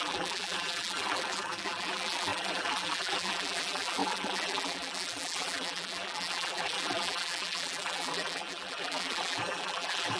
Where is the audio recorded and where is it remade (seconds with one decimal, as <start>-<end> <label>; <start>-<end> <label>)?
0.0-10.2 remade